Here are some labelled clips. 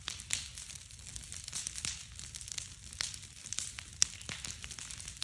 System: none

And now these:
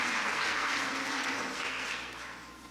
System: codec, SNAC